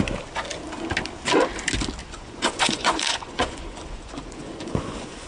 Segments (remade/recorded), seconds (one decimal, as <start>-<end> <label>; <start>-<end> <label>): 0.0-2.0 recorded; 2.0-5.3 remade

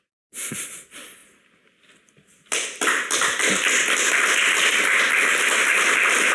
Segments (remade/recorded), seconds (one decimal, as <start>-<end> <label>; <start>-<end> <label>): 0.0-6.3 recorded